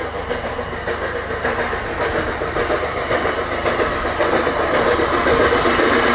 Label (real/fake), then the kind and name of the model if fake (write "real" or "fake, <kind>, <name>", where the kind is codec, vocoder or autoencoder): real